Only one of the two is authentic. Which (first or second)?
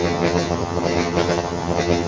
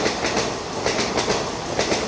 second